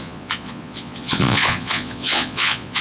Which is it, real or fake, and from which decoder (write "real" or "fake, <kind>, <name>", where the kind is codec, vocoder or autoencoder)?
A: fake, vocoder, Vocos